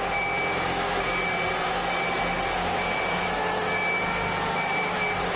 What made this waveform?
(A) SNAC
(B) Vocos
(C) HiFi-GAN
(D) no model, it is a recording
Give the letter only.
D